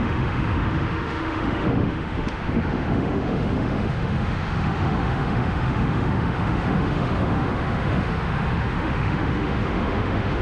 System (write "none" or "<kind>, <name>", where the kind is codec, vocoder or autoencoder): autoencoder, DAC-VAE